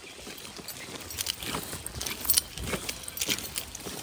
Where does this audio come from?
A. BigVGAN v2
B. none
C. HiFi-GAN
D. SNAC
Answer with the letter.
B